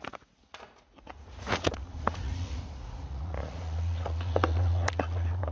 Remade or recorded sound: remade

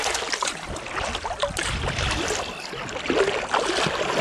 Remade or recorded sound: recorded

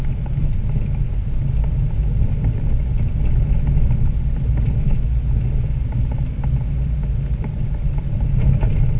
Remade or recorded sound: recorded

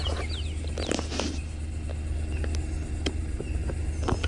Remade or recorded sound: recorded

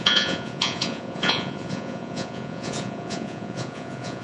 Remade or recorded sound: remade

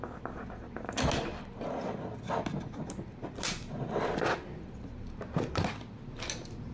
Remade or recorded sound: recorded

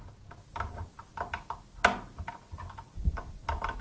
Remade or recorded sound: recorded